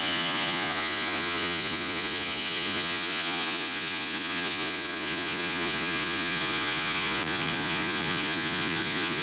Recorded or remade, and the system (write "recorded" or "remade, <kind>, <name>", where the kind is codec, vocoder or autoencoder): remade, vocoder, Vocos